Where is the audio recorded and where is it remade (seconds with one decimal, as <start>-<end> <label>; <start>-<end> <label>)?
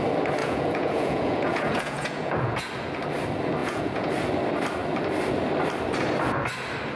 0.0-0.4 recorded; 0.4-2.7 remade; 2.7-3.6 recorded; 3.6-4.1 remade; 4.1-7.0 recorded